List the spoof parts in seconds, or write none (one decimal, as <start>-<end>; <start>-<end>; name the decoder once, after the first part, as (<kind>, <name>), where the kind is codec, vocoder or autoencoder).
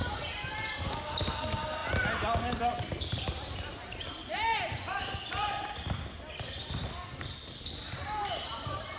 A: 0.0-1.3 (vocoder, BigVGAN v2); 3.7-5.0